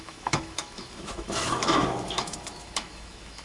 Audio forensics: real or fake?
fake